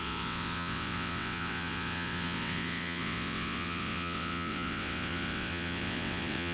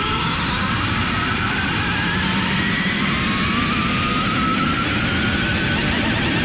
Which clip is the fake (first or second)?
first